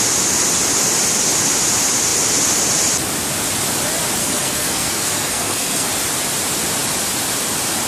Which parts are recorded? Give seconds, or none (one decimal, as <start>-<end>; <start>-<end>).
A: 0.0-4.2; 5.9-7.9